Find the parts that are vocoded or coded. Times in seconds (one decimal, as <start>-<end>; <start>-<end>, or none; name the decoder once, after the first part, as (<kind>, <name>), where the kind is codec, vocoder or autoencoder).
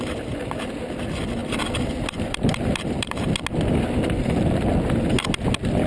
1.4-3.3 (vocoder, BigVGAN v2)